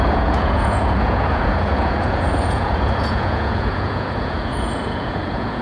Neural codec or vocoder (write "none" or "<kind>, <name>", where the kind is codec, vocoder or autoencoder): vocoder, Vocos